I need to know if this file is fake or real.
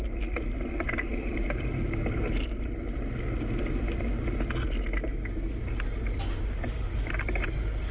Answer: real